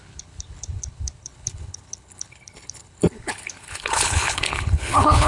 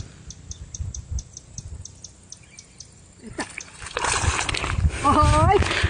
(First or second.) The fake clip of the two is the first